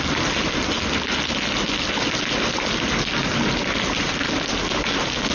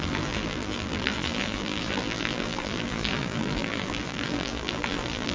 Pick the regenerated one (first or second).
second